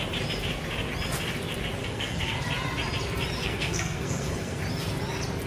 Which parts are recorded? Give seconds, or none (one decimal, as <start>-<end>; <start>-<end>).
0.0-1.8; 2.4-3.4; 4.6-5.5